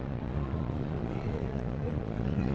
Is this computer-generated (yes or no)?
yes